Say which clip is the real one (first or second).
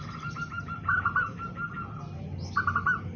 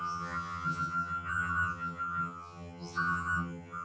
first